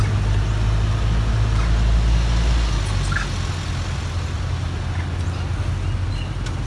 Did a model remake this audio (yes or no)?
no